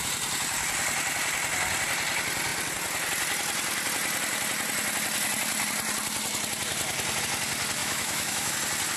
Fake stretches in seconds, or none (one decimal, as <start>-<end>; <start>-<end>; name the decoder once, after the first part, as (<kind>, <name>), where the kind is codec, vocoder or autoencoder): 7.8-8.5 (autoencoder, DAC-VAE)

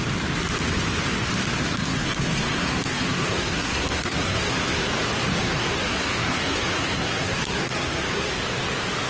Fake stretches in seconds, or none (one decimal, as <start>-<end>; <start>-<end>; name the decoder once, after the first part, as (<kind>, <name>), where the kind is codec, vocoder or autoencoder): 1.6-4.9 (codec, SNAC); 5.4-8.4

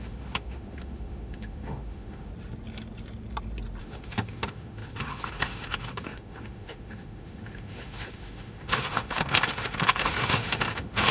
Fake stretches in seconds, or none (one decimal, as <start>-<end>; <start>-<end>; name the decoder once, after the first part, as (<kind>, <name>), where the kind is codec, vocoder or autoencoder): 0.0-2.3 (autoencoder, DAC-VAE); 3.8-11.1